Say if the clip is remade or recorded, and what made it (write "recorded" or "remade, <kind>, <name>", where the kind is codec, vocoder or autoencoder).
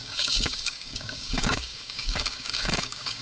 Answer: remade, codec, DAC